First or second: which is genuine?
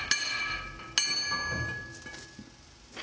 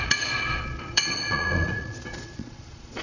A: first